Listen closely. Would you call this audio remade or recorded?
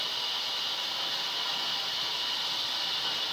recorded